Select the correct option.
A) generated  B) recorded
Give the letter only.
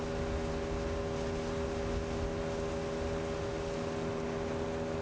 B